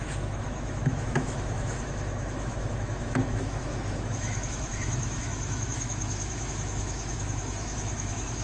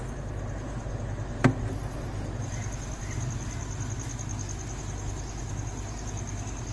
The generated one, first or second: first